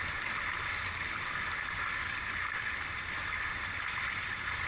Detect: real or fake real